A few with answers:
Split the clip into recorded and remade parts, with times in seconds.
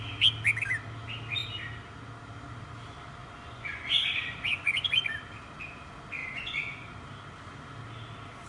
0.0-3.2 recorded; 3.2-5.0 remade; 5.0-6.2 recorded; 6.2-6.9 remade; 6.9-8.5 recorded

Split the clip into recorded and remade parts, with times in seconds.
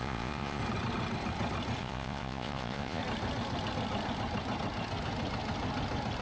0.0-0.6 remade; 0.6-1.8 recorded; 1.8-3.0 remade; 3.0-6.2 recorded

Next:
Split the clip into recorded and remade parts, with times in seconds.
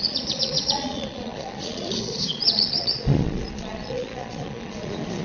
0.0-5.2 remade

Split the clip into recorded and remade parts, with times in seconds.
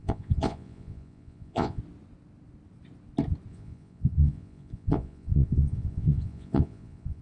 0.0-1.8 remade; 1.8-3.5 recorded; 3.5-7.2 remade